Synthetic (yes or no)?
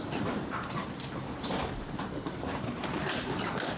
yes